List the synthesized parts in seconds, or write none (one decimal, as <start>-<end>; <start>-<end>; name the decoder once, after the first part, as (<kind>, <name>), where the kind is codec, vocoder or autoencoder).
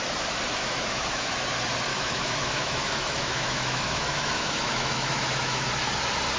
0.6-1.3 (autoencoder, DAC-VAE); 1.9-5.7